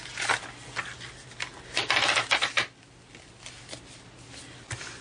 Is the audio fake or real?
real